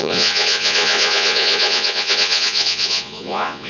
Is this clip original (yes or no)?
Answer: no